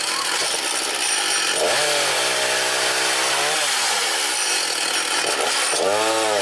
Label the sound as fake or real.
real